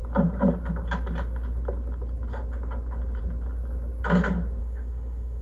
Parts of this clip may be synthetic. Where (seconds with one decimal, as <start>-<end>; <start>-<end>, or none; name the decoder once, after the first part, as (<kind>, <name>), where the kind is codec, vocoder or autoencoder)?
4.6-5.4 (autoencoder, DAC-VAE)